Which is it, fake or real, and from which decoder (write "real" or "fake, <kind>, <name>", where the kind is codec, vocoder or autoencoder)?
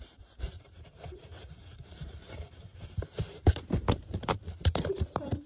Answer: fake, vocoder, BigVGAN v2